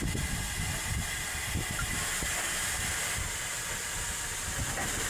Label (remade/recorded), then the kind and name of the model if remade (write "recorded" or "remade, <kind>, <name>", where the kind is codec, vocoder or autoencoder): recorded